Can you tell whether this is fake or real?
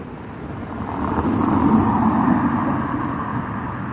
real